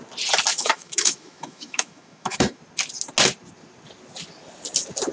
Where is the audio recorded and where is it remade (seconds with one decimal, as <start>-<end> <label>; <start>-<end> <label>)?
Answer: 0.0-0.5 recorded; 0.5-2.6 remade; 2.6-5.1 recorded